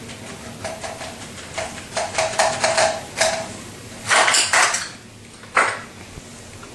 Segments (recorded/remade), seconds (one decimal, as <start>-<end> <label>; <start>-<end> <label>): 0.0-0.6 recorded; 0.6-4.6 remade; 4.6-6.7 recorded